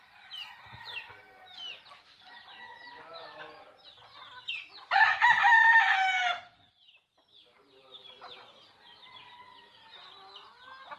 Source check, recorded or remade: recorded